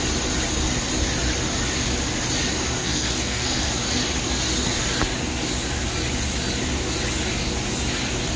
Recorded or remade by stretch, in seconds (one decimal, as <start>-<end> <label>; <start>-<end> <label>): 0.0-2.8 recorded; 2.8-3.7 remade; 3.7-8.4 recorded